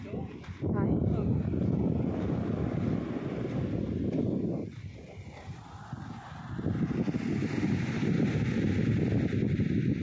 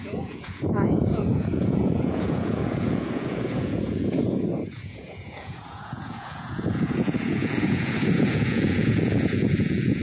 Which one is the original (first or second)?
first